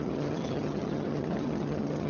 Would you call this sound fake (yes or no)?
yes